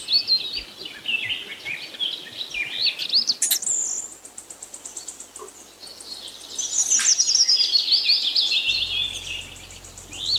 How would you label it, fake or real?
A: real